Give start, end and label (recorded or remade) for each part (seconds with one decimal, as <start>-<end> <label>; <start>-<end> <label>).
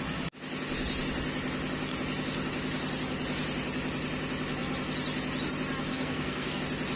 0.0-5.9 recorded; 5.9-6.6 remade; 6.6-7.0 recorded